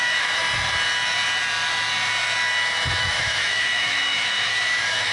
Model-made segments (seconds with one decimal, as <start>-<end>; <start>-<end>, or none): 0.0-0.4; 3.0-5.1